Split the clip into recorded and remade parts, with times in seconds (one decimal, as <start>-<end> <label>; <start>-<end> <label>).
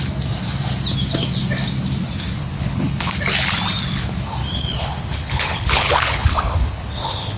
0.0-2.4 recorded; 2.4-3.1 remade; 3.1-4.4 recorded; 4.4-7.4 remade